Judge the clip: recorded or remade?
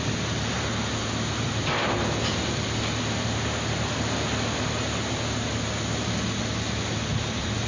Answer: recorded